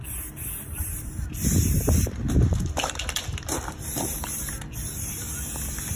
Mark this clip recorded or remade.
remade